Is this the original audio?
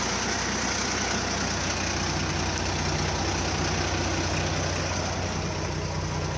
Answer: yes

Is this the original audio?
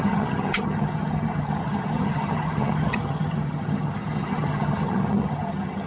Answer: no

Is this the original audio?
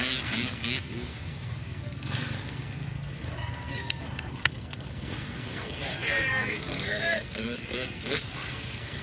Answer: no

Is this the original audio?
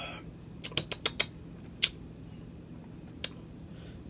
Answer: yes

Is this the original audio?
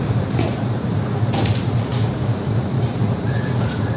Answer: no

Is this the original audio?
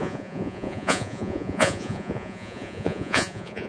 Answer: no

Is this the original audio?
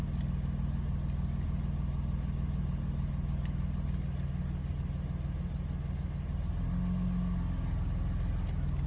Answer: yes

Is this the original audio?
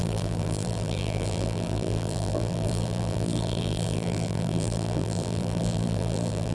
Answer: no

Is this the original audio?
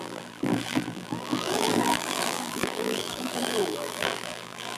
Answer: no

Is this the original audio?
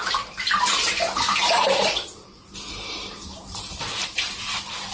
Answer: no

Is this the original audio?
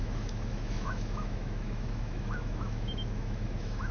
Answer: no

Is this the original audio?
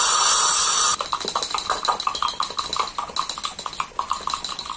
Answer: yes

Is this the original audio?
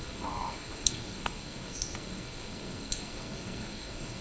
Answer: no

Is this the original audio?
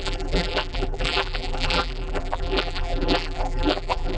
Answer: no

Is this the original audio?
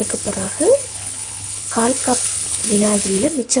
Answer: no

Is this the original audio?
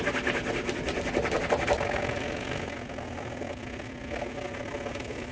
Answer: yes